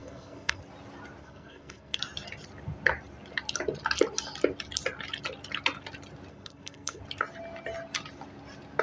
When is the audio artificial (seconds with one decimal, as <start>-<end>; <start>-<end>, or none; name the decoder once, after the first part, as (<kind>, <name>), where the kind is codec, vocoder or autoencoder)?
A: 0.0-0.6 (codec, SNAC); 1.2-2.0; 6.3-7.0